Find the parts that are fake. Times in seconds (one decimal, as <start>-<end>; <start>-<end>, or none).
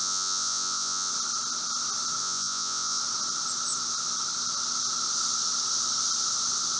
0.0-1.1; 2.2-3.0